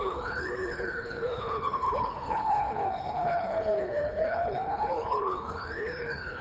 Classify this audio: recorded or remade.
remade